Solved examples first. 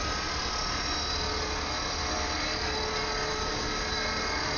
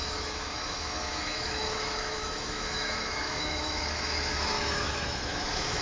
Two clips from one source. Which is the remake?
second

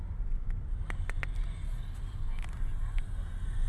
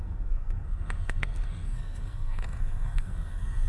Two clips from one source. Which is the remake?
second